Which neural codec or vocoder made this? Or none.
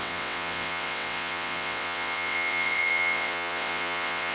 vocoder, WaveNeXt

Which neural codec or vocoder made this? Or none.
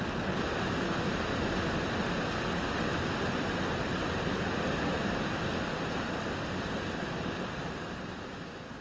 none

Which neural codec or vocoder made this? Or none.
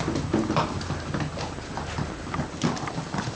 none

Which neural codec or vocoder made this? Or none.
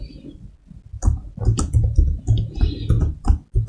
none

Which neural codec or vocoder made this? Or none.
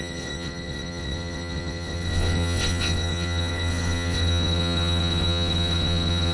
vocoder, WaveNeXt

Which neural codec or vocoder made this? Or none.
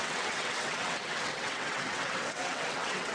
vocoder, WaveNeXt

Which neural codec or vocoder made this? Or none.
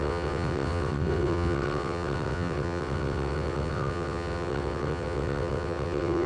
vocoder, WaveNeXt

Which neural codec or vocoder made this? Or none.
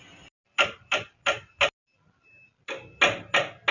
none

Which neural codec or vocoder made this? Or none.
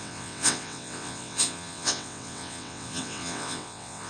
vocoder, WaveNeXt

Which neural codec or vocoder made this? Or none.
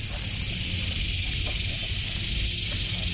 none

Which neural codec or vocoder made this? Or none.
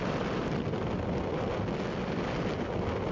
none